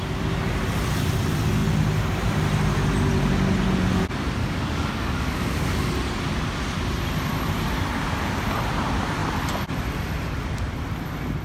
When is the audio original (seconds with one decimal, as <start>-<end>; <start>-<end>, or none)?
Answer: 0.0-4.4; 5.9-11.4